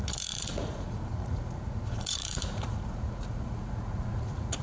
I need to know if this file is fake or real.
fake